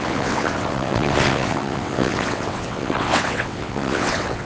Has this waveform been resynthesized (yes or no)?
yes